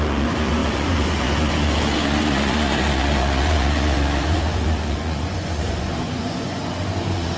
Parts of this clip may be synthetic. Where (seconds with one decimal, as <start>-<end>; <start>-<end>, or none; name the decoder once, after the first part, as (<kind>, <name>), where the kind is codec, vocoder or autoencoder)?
0.0-7.4 (vocoder, Vocos)